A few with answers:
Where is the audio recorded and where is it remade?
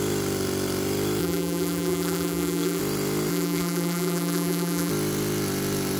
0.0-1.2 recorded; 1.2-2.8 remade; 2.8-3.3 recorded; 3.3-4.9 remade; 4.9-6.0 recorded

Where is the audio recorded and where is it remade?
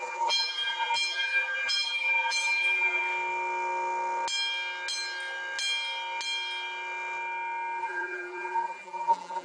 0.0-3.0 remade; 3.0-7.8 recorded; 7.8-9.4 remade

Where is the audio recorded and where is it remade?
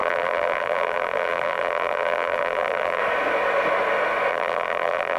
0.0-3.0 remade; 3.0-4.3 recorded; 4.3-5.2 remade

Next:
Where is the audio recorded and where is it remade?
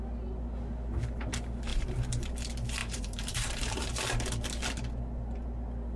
0.0-1.7 recorded; 1.7-2.3 remade; 2.3-2.8 recorded; 2.8-3.9 remade; 3.9-6.0 recorded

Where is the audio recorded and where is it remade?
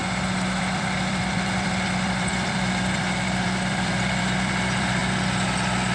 0.0-0.6 recorded; 0.6-5.0 remade; 5.0-5.9 recorded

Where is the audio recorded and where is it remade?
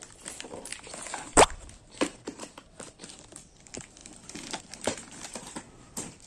0.0-2.3 remade; 2.3-2.9 recorded; 2.9-6.3 remade